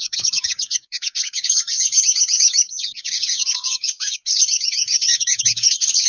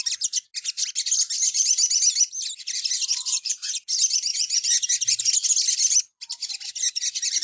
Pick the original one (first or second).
second